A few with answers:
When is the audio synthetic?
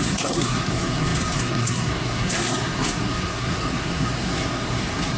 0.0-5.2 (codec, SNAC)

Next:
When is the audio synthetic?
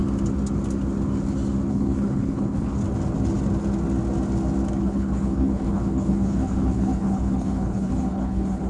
1.7-2.8 (codec, HILCodec); 4.8-8.7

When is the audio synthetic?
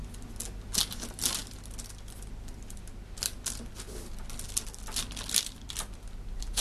none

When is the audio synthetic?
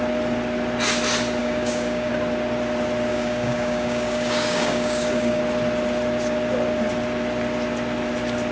1.4-2.1 (codec, DAC); 3.1-5.4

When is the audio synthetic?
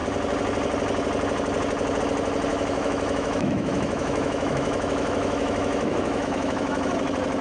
2.5-6.9 (autoencoder, DAC-VAE)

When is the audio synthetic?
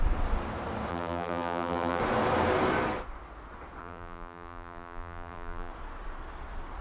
0.9-2.0 (vocoder, BigVGAN v2); 3.8-5.7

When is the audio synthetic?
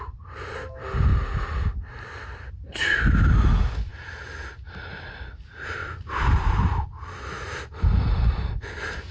5.8-7.7 (vocoder, BigVGAN v2)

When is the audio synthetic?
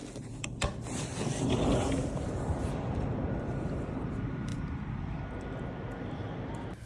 0.0-4.1 (vocoder, BigVGAN v2); 4.5-5.1